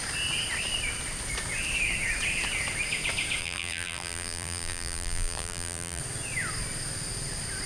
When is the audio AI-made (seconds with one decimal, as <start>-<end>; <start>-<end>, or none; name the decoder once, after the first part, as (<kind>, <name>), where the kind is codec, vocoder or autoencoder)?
3.4-6.0 (vocoder, BigVGAN v2)